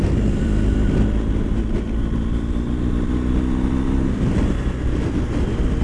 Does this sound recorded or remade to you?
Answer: remade